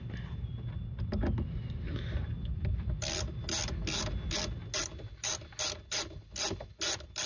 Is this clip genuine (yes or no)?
yes